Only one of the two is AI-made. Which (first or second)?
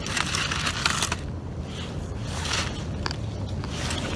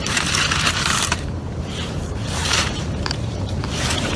second